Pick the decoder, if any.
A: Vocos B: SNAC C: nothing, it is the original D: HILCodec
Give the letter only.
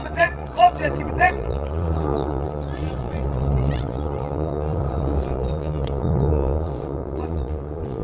A